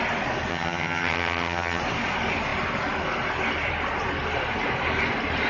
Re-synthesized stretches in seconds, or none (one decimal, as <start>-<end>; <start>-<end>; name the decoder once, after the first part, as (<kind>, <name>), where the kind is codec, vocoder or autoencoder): 0.5-1.8 (vocoder, HiFi-GAN)